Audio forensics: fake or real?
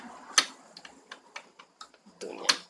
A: real